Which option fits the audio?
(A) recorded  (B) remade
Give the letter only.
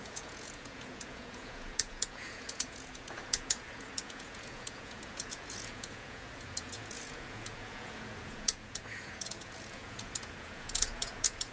B